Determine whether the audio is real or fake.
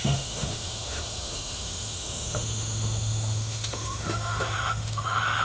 fake